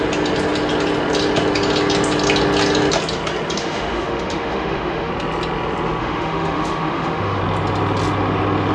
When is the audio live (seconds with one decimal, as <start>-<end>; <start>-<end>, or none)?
0.0-3.6; 5.1-6.0; 7.4-8.7